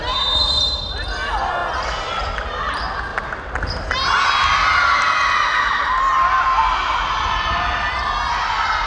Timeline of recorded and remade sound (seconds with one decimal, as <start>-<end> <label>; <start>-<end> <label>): 0.0-8.9 recorded